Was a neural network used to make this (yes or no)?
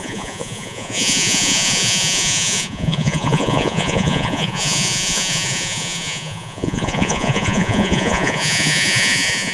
yes